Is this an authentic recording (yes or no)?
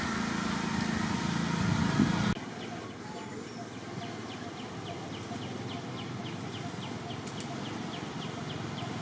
yes